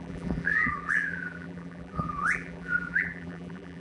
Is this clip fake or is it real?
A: fake